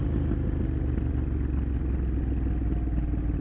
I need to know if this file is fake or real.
real